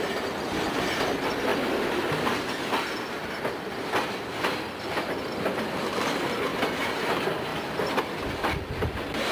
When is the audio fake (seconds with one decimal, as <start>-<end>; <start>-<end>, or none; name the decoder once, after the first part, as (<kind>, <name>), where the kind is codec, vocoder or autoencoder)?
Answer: 6.5-7.1 (vocoder, BigVGAN v2)